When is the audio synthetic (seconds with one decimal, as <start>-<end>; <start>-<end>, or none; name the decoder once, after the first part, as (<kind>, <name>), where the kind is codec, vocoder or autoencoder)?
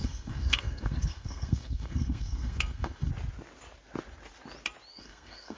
0.0-3.1 (codec, SNAC); 4.9-5.6